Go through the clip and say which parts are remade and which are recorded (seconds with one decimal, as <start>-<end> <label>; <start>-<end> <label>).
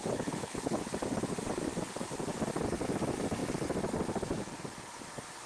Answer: 0.0-0.9 remade; 0.9-5.5 recorded